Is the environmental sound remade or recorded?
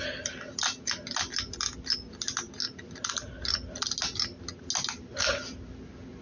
recorded